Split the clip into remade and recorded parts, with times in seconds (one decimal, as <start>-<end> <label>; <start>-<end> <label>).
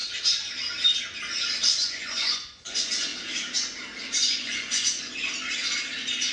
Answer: 0.0-1.7 recorded; 1.7-3.1 remade; 3.1-4.0 recorded; 4.0-5.2 remade; 5.2-6.3 recorded